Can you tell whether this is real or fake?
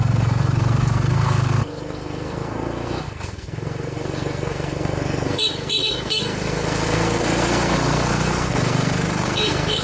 fake